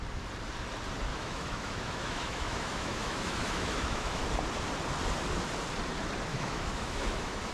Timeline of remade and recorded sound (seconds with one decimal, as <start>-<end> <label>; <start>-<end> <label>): 0.0-1.1 recorded; 1.1-4.2 remade; 4.2-6.3 recorded; 6.3-7.5 remade